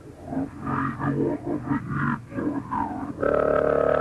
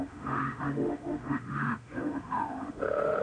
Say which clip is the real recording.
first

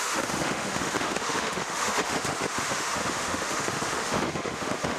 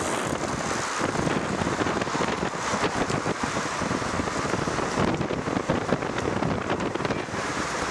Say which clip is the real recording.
second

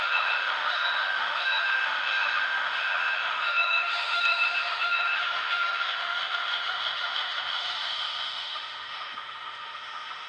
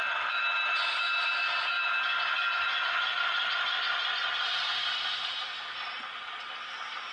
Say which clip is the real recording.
second